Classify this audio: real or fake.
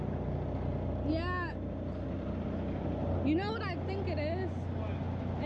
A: real